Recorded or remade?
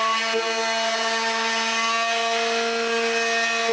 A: recorded